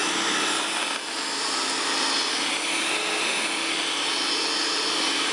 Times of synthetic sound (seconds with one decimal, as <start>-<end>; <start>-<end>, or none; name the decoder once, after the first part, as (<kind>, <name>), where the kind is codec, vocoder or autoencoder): 3.2-3.7 (autoencoder, DAC-VAE)